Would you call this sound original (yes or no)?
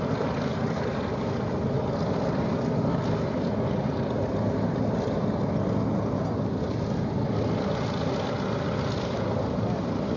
yes